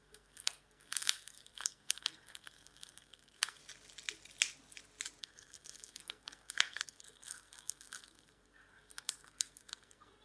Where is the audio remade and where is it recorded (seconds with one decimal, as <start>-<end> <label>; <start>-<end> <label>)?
0.0-3.6 remade; 3.6-5.2 recorded; 5.2-10.2 remade